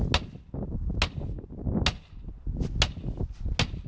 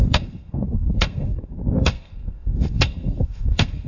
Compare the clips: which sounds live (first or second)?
first